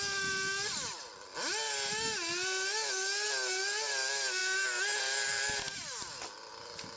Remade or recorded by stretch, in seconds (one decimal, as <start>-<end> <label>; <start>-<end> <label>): 0.0-7.0 recorded

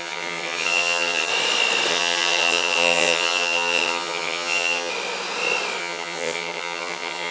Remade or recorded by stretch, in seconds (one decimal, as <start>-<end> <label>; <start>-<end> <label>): 0.0-1.3 remade; 1.3-1.9 recorded; 1.9-4.9 remade; 4.9-5.8 recorded; 5.8-7.3 remade

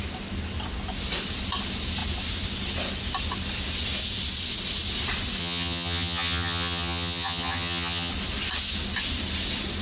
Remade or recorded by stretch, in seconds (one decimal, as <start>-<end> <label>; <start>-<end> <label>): 0.0-5.4 recorded; 5.4-8.1 remade; 8.1-9.8 recorded

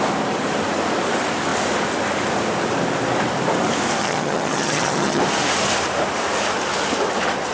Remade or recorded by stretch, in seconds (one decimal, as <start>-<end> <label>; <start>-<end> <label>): 0.0-4.0 recorded; 4.0-5.2 remade; 5.2-7.5 recorded

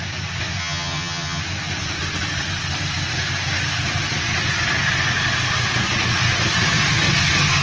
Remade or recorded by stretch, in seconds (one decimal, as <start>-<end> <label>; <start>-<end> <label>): 0.0-0.6 recorded; 0.6-1.4 remade; 1.4-7.6 recorded

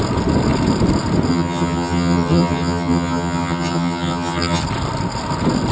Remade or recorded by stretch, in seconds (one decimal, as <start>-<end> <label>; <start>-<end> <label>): 0.0-1.3 recorded; 1.3-4.6 remade; 4.6-5.7 recorded

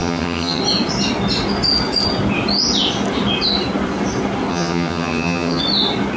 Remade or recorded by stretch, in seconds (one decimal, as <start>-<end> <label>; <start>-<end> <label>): 0.0-0.6 remade; 0.6-4.5 recorded; 4.5-5.6 remade; 5.6-6.2 recorded

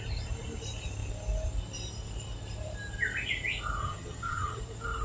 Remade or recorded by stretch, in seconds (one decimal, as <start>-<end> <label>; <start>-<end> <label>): 0.0-3.8 recorded; 3.8-4.6 remade; 4.6-5.0 recorded